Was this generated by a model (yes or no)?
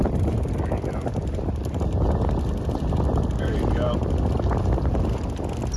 no